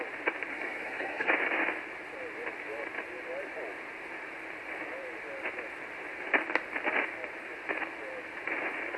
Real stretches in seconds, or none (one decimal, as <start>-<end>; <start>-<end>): 0.0-0.5; 1.3-9.0